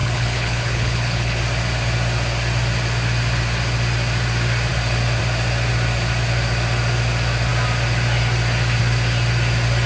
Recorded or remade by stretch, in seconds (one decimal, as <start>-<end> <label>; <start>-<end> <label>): 0.0-1.4 remade; 1.4-9.9 recorded